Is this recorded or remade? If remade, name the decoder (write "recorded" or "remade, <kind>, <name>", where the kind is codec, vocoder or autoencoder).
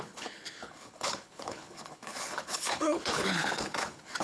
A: remade, codec, HILCodec